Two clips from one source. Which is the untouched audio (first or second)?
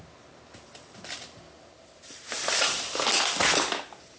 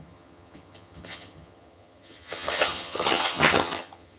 first